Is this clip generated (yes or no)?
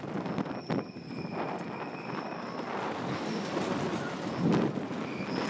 no